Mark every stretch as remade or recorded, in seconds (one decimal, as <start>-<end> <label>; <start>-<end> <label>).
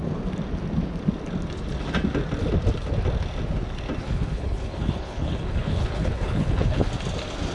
0.0-4.0 recorded; 4.0-6.9 remade; 6.9-7.5 recorded